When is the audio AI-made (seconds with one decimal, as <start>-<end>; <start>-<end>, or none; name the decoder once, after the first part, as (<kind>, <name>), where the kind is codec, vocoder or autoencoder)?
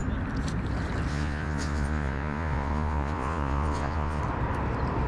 1.1-4.2 (vocoder, Vocos)